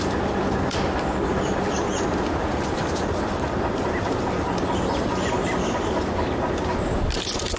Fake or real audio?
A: fake